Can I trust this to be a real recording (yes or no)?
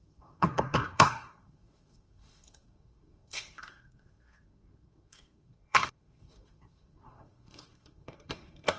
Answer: no